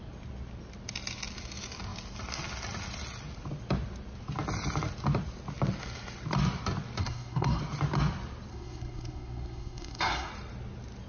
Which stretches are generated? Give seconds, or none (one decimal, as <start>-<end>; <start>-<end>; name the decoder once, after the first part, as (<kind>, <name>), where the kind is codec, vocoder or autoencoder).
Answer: 7.0-7.6 (codec, SNAC); 8.5-10.3